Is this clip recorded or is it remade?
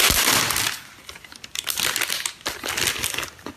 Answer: recorded